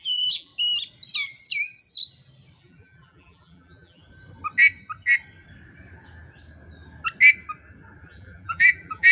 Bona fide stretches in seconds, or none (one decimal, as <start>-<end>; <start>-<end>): 0.5-2.6; 4.0-8.0